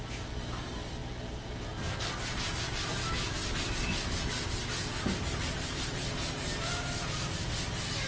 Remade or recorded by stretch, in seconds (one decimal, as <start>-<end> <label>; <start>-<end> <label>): 0.0-8.1 recorded